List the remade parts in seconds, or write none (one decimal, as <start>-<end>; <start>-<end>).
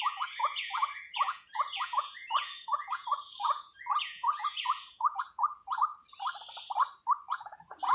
0.0-5.9; 7.3-7.9